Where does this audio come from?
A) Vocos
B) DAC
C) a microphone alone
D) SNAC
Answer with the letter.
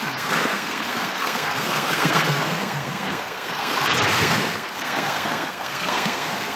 D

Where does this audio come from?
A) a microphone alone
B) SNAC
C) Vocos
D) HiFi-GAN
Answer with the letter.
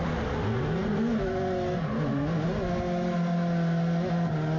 A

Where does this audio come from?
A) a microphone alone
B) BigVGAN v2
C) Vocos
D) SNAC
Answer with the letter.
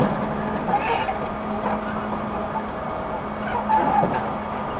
A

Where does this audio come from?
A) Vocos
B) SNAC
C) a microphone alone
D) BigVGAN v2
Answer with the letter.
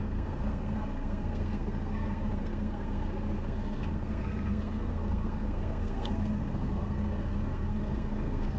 B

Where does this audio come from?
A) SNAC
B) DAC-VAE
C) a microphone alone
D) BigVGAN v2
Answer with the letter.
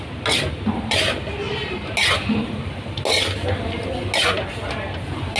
C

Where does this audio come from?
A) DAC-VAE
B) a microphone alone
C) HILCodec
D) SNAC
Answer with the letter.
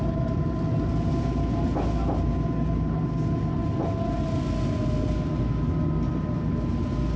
B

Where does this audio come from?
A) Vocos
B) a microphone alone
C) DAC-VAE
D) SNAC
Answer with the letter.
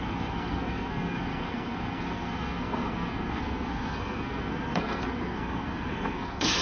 D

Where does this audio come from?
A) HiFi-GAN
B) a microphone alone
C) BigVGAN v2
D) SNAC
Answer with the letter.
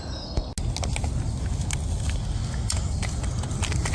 B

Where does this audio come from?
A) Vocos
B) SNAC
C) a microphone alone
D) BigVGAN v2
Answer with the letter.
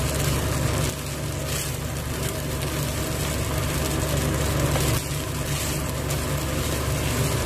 C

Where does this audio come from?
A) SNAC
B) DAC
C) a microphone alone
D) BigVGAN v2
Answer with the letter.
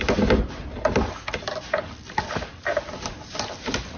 C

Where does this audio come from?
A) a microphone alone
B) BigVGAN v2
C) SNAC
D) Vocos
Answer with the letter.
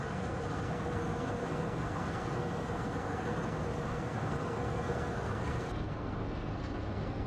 C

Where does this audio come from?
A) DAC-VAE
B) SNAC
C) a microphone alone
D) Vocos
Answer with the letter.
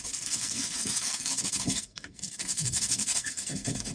B